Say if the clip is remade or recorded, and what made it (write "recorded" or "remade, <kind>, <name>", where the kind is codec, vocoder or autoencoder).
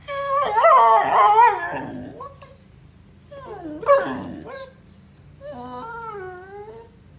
recorded